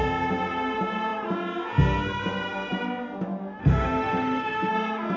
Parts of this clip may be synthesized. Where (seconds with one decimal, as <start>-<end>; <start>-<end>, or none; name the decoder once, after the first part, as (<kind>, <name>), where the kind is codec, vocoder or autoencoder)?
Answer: 3.6-4.7 (autoencoder, DAC-VAE)